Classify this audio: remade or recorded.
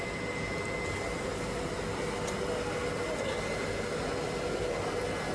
recorded